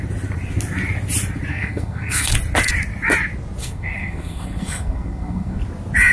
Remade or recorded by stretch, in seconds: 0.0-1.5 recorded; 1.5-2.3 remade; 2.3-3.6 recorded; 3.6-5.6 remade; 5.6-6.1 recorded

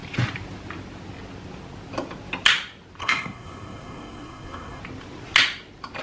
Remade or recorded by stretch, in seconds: 0.0-3.0 recorded; 3.0-4.8 remade; 4.8-6.0 recorded

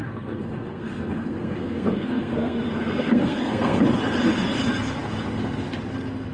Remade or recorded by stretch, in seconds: 0.0-3.8 remade; 3.8-6.3 recorded

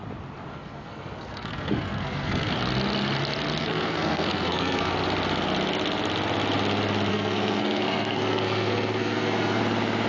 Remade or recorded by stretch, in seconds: 0.0-0.5 recorded; 0.5-2.5 remade; 2.5-3.6 recorded; 3.6-4.9 remade; 4.9-7.1 recorded; 7.1-9.6 remade; 9.6-10.1 recorded